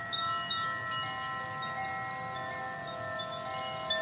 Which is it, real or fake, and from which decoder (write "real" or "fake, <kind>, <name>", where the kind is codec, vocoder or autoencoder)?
real